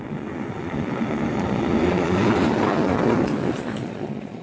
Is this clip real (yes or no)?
no